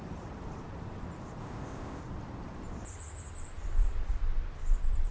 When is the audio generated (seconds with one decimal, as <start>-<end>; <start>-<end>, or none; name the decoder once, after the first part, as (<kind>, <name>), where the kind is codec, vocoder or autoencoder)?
1.4-2.0 (codec, ZipCodec)